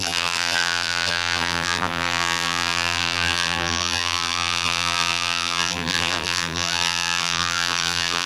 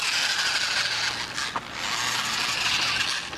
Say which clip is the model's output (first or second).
first